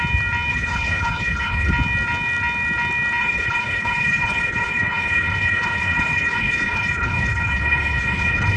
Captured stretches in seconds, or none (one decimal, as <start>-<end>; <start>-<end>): 0.0-0.5; 1.7-3.2